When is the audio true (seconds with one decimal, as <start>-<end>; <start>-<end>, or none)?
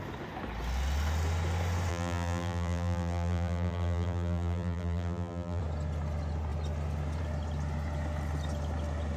0.0-1.9; 5.6-9.2